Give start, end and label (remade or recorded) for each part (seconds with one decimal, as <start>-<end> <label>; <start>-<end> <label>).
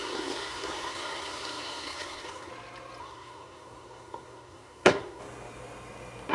0.0-2.5 remade; 2.5-3.0 recorded; 3.0-5.2 remade; 5.2-6.3 recorded